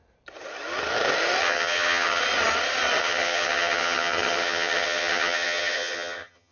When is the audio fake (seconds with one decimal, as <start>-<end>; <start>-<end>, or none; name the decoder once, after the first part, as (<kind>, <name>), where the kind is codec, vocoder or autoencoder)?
1.4-2.2 (vocoder, HiFi-GAN); 3.0-6.5